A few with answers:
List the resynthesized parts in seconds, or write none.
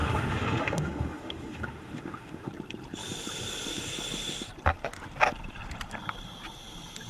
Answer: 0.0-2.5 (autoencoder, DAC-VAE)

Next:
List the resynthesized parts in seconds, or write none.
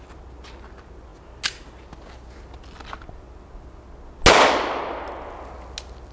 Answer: none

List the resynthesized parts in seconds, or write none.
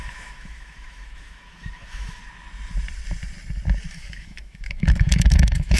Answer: 0.0-2.2 (autoencoder, DAC-VAE); 3.9-5.8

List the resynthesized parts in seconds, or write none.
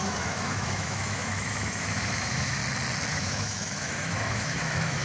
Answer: 0.0-2.6 (autoencoder, DAC-VAE); 3.1-5.0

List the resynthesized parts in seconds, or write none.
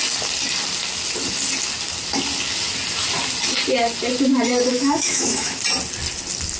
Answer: 4.7-5.6 (autoencoder, DAC-VAE)